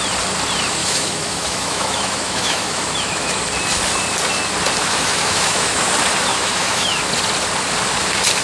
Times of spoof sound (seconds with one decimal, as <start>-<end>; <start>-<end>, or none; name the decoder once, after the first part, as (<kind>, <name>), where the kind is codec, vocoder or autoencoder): 0.8-3.4 (autoencoder, DAC-VAE); 4.8-5.8; 6.3-7.1